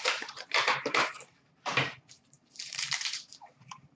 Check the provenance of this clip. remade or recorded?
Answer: remade